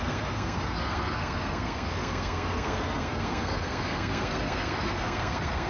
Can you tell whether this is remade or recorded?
remade